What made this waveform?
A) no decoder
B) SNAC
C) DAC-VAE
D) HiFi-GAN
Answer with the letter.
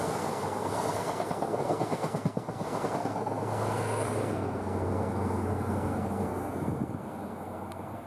B